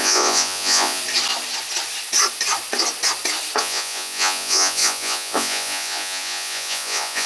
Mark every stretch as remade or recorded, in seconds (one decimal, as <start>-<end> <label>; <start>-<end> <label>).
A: 0.0-1.0 remade; 1.0-3.6 recorded; 3.6-7.3 remade